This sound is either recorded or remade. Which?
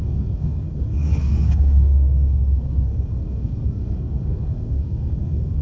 remade